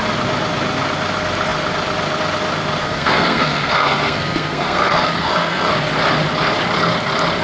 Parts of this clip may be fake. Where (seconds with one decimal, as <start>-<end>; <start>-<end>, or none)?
2.8-5.7

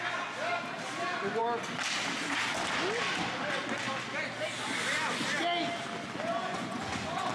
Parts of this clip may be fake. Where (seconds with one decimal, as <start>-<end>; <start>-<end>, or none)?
6.4-7.3

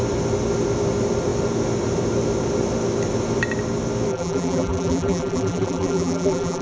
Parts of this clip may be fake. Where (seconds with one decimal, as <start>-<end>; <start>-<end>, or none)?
4.1-6.6

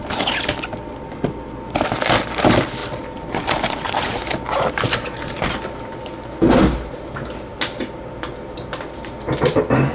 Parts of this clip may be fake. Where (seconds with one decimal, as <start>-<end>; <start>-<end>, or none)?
none